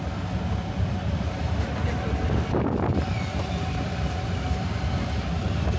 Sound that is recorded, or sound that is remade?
recorded